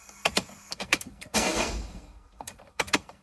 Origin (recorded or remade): remade